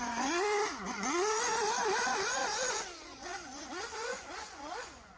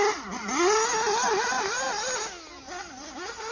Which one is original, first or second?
second